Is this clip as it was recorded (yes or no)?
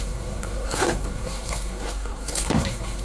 no